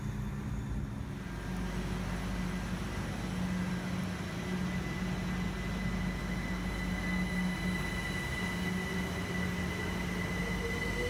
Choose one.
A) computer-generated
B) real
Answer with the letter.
B